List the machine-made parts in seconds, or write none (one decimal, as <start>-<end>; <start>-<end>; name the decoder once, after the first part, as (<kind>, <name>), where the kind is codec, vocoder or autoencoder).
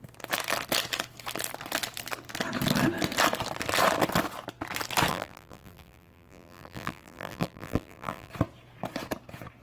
5.1-8.3 (vocoder, BigVGAN v2)